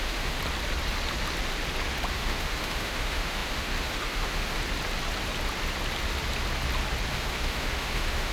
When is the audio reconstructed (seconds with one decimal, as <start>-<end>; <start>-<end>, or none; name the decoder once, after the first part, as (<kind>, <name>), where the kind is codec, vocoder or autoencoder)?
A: 0.0-0.4 (autoencoder, DAC-VAE); 2.1-4.6; 7.1-8.3